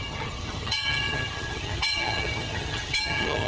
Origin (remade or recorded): remade